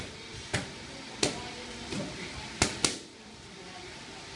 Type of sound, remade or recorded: recorded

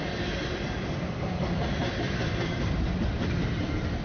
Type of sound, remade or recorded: remade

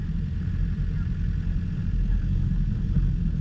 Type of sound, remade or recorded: recorded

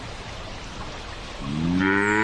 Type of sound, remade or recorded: recorded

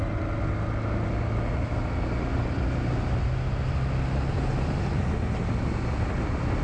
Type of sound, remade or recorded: recorded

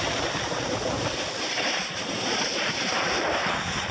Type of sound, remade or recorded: recorded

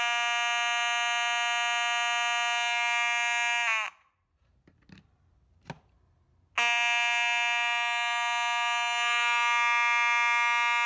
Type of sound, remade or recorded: recorded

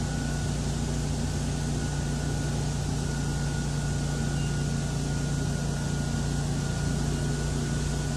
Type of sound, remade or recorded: recorded